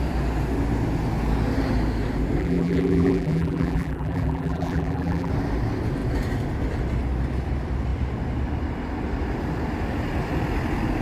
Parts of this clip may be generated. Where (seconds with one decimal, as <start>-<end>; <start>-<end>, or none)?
2.4-5.3